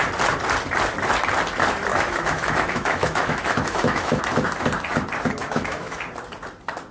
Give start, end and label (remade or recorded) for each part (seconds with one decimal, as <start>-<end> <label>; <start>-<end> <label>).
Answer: 0.0-1.9 recorded; 1.9-4.2 remade; 4.2-5.4 recorded; 5.4-6.0 remade; 6.0-6.9 recorded